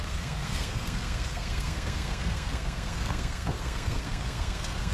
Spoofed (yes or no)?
yes